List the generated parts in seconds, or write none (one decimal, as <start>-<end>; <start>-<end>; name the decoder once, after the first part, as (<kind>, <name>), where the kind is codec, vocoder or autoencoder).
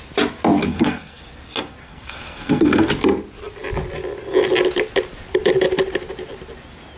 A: 0.6-1.2 (codec, SNAC); 1.8-2.9